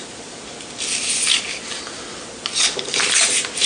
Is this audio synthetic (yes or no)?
no